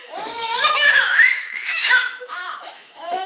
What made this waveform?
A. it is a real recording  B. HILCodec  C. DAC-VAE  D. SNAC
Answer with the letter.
C